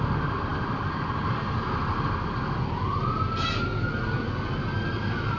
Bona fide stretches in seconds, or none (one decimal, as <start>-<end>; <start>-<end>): 0.0-5.4